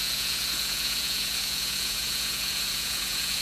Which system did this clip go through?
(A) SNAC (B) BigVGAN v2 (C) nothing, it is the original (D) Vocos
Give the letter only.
D